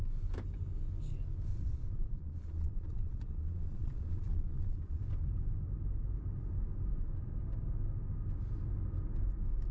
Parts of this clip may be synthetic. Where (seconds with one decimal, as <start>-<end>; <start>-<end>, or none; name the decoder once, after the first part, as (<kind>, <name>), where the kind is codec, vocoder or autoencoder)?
1.5-5.0 (vocoder, Vocos)